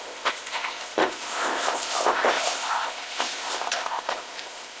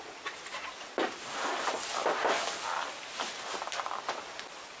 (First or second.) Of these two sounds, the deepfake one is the first